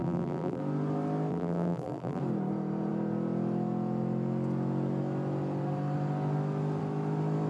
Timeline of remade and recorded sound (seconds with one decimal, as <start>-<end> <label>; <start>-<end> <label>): 0.0-0.6 remade; 0.6-1.3 recorded; 1.3-2.2 remade; 2.2-7.5 recorded